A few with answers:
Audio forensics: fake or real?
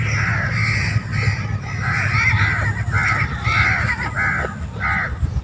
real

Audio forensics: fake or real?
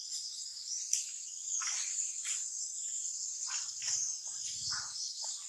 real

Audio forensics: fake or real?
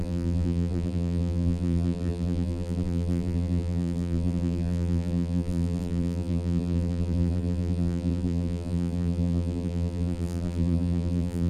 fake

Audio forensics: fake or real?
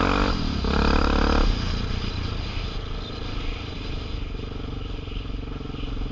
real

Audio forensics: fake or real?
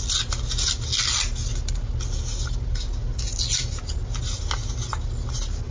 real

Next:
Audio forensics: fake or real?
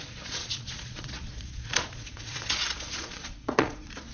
fake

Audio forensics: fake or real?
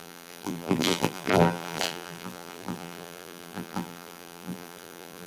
fake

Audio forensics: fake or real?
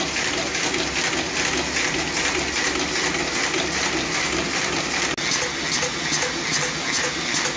real